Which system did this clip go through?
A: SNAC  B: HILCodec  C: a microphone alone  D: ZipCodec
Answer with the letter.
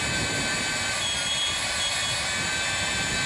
C